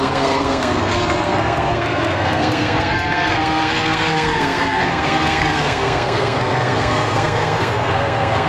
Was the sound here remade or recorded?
remade